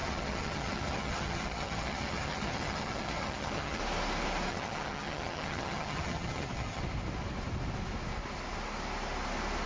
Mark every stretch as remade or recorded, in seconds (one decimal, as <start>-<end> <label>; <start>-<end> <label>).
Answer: 0.0-3.8 remade; 3.8-4.5 recorded; 4.5-6.8 remade; 6.8-9.7 recorded